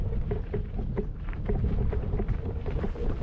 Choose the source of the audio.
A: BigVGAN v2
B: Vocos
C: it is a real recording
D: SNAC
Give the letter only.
A